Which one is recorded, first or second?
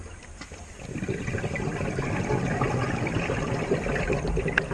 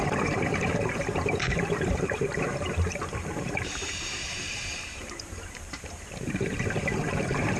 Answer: first